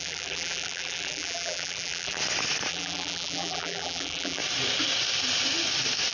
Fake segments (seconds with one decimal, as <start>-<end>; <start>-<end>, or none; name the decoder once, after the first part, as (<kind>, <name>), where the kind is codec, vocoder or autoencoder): 0.0-2.2 (vocoder, BigVGAN v2); 2.7-4.4